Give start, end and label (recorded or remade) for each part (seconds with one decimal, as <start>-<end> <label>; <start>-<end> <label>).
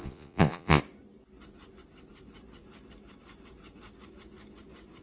0.0-0.8 remade; 0.8-5.0 recorded